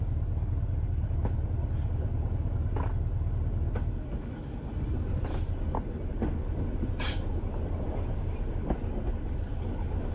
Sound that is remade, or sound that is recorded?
recorded